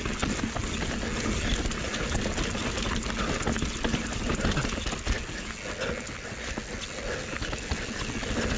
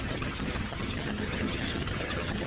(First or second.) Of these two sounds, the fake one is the second